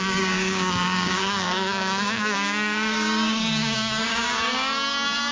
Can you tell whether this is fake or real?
fake